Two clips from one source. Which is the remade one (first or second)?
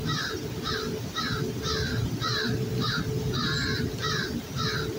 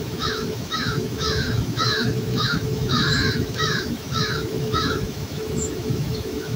second